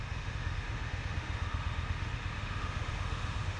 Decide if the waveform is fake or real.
fake